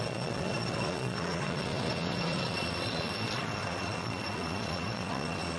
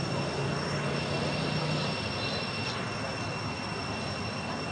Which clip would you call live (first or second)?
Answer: second